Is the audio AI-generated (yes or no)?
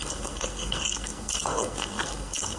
yes